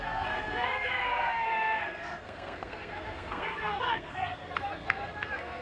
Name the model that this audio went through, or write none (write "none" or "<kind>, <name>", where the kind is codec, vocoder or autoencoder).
codec, SNAC